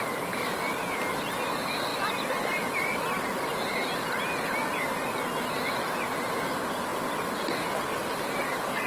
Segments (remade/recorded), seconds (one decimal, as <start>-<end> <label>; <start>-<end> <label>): 0.0-8.9 recorded